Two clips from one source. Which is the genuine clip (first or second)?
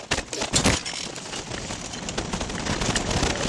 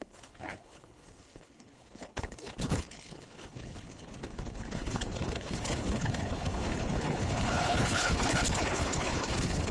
first